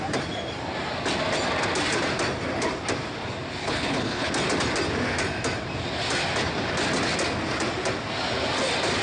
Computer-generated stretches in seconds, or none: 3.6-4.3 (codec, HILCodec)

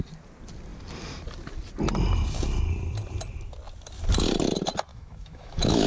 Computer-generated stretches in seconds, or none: 4.9-5.9 (autoencoder, DAC-VAE)